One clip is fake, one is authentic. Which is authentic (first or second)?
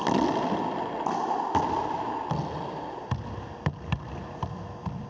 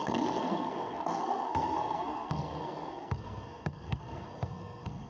first